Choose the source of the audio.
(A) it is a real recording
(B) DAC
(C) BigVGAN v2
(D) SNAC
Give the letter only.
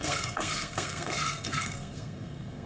D